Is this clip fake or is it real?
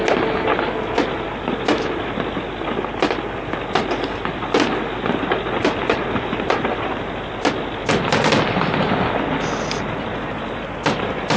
real